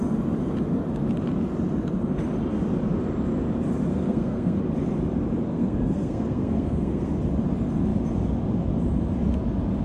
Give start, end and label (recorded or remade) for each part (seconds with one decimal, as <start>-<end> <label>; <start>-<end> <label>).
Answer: 0.0-3.9 recorded; 3.9-4.6 remade; 4.6-5.5 recorded; 5.5-7.1 remade; 7.1-9.8 recorded